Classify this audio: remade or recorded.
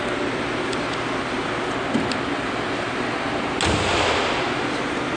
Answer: recorded